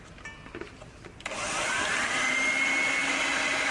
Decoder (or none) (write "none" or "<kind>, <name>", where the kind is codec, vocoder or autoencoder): none